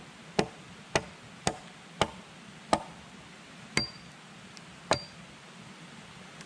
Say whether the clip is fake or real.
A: real